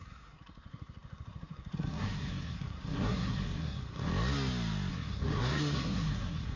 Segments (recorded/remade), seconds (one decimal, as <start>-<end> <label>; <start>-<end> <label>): 0.0-4.1 remade; 4.1-4.9 recorded; 4.9-6.6 remade